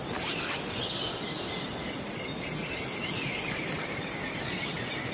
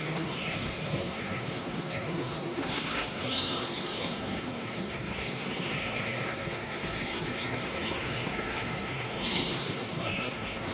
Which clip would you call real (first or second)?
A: first